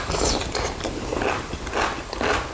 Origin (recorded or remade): recorded